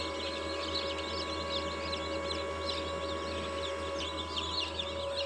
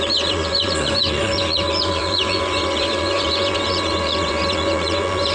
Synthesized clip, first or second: second